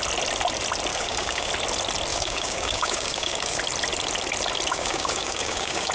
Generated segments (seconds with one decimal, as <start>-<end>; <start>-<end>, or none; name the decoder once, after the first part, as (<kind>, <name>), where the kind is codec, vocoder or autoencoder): 0.9-1.5 (codec, DAC); 2.1-3.6; 4.7-5.9